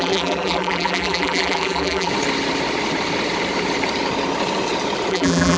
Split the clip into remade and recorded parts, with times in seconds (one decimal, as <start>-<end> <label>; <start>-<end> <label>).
0.0-2.1 remade; 2.1-5.1 recorded; 5.1-5.6 remade